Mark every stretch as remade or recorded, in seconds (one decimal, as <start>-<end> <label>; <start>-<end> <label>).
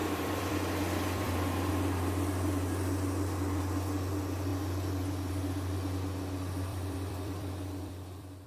0.0-1.7 remade; 1.7-6.7 recorded; 6.7-8.5 remade